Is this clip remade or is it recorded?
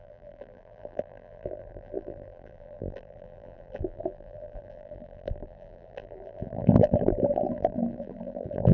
remade